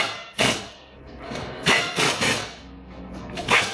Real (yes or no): no